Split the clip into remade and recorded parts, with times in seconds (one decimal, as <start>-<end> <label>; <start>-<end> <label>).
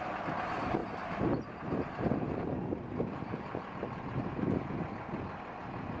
0.0-0.8 recorded; 0.8-4.4 remade; 4.4-6.0 recorded